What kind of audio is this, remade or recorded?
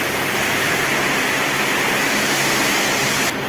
recorded